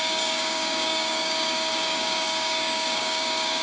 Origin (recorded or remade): remade